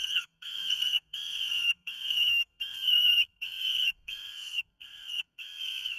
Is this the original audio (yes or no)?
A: no